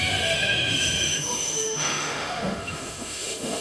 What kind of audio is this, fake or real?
fake